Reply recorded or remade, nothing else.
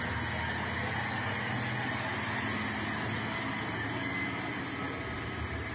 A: recorded